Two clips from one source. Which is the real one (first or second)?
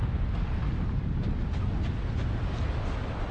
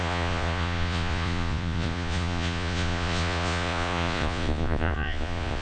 first